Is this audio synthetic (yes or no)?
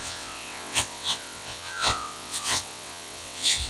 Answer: yes